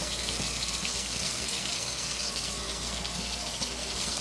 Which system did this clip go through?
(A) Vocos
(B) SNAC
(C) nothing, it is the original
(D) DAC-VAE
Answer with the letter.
B